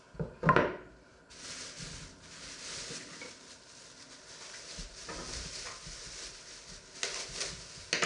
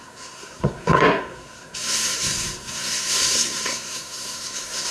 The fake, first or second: second